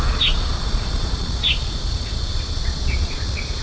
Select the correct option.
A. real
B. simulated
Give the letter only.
B